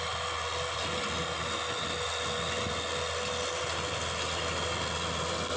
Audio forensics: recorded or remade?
recorded